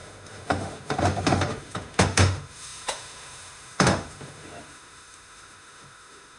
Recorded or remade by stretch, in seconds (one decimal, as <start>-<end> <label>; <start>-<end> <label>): 0.0-6.4 remade